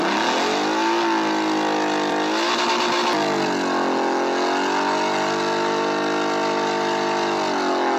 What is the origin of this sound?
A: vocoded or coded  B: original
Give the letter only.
B